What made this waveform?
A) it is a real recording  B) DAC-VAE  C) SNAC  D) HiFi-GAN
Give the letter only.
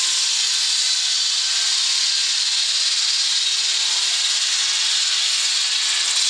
A